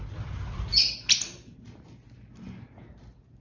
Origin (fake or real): real